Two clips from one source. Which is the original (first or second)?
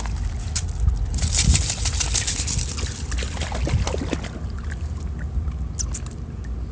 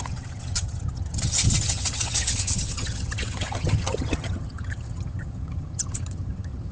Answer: first